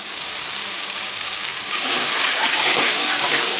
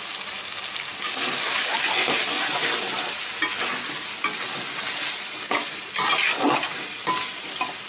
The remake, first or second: first